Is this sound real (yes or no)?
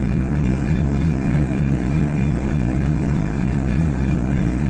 no